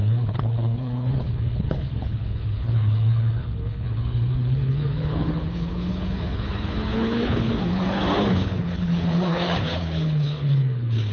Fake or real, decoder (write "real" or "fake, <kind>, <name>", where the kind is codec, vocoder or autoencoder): fake, codec, HILCodec